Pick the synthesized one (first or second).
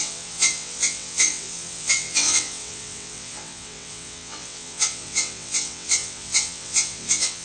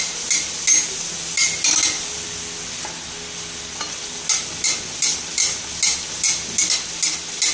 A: first